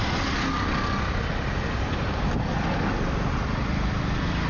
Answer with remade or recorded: recorded